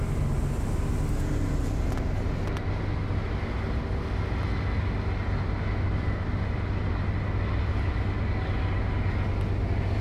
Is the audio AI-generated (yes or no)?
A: no